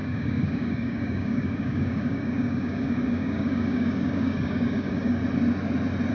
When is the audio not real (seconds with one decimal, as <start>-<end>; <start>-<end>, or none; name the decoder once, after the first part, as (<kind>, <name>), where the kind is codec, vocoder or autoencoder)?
0.0-5.2 (codec, DAC)